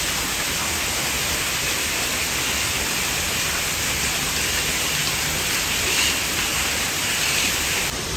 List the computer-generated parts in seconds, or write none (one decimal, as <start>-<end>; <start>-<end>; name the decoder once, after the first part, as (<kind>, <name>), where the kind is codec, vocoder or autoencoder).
5.0-8.2 (vocoder, BigVGAN v2)